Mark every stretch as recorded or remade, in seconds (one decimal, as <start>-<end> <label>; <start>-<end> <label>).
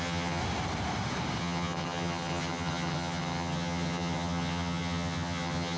0.0-0.4 remade; 0.4-1.4 recorded; 1.4-5.8 remade